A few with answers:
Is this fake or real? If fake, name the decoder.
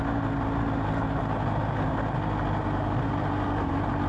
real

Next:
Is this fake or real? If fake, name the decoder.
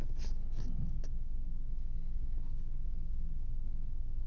real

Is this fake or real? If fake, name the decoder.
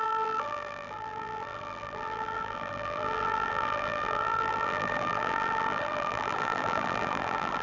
fake, vocoder, BigVGAN v2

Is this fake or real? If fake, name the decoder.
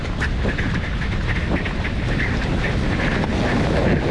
real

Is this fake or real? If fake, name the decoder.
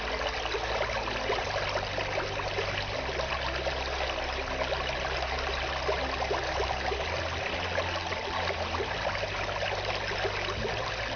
real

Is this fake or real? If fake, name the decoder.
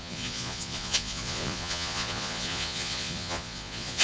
fake, vocoder, Vocos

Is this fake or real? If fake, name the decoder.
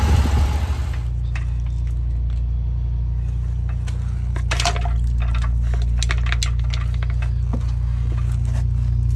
real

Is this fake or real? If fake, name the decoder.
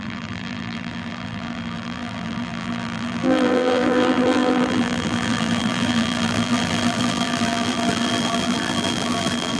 fake, vocoder, BigVGAN v2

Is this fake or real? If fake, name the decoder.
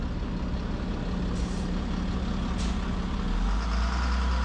real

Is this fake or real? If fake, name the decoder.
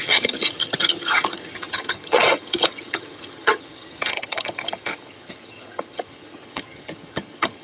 fake, vocoder, HiFi-GAN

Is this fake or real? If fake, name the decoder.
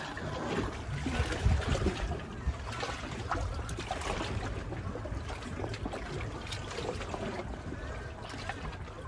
real